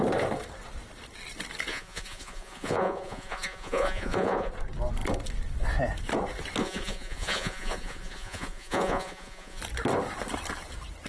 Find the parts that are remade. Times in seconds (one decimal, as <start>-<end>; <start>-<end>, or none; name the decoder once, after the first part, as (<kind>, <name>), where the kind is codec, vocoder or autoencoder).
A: 1.7-4.5 (vocoder, Vocos); 6.6-9.6